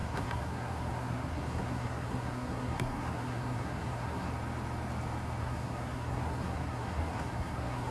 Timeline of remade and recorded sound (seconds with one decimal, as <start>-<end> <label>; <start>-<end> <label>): 0.0-4.3 remade; 4.3-5.4 recorded; 5.4-7.9 remade